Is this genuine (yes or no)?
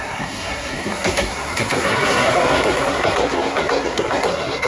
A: no